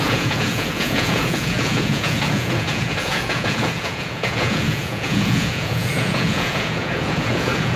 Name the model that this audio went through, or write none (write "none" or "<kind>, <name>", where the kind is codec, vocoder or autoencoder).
vocoder, Vocos